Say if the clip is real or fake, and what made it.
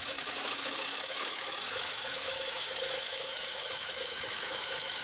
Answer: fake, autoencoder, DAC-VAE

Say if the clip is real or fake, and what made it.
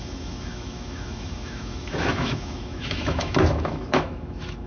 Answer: fake, autoencoder, DAC-VAE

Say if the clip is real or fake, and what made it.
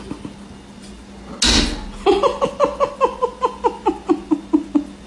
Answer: real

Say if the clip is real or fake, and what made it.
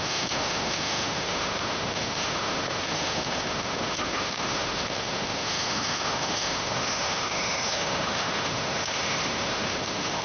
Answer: fake, autoencoder, DAC-VAE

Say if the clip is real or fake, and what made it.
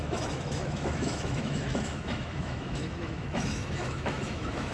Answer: fake, autoencoder, DAC-VAE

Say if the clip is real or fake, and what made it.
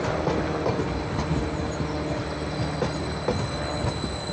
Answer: real